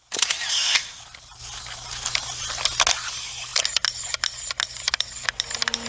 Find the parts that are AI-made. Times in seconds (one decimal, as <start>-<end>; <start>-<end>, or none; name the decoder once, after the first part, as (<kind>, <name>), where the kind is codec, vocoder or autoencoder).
0.5-1.0 (codec, ZipCodec)